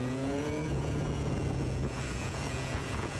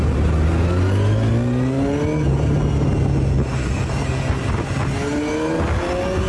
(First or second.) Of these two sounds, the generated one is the first